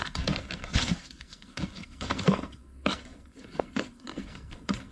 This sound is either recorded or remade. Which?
remade